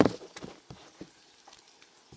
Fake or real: real